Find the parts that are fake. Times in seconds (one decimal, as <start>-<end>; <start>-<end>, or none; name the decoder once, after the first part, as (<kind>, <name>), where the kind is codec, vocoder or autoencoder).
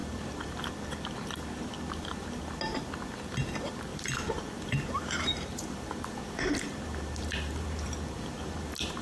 0.0-0.7 (vocoder, BigVGAN v2); 3.9-9.0